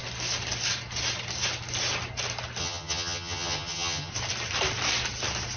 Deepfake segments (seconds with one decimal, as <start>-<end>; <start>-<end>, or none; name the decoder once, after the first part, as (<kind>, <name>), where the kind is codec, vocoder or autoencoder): 2.6-4.1 (vocoder, HiFi-GAN)

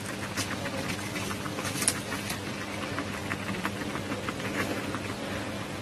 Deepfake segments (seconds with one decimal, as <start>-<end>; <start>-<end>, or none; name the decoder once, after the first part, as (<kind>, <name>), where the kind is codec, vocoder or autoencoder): none